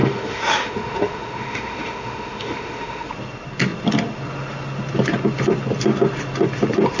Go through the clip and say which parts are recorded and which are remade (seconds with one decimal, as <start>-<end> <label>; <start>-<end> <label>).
0.0-3.1 remade; 3.1-7.0 recorded